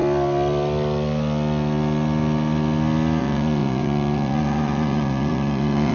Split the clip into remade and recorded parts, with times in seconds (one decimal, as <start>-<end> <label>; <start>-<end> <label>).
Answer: 0.0-3.2 recorded; 3.2-5.9 remade